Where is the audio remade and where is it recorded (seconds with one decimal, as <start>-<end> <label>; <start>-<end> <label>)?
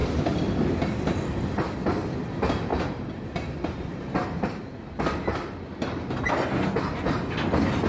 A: 0.0-7.9 recorded